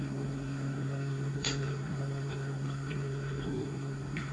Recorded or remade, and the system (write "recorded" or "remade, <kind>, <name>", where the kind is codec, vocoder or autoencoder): remade, codec, SNAC